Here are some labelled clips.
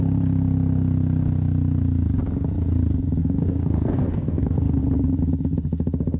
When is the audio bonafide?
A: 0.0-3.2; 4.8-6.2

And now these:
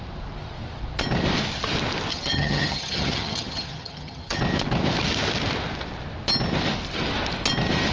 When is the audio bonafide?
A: 0.0-2.1; 4.4-7.9

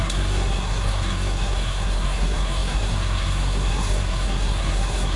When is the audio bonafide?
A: none